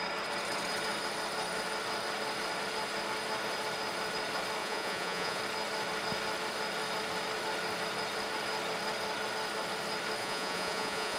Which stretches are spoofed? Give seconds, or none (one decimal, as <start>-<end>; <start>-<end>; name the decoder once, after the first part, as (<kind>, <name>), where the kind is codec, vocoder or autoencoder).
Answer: 4.6-5.4 (vocoder, Vocos); 10.2-11.2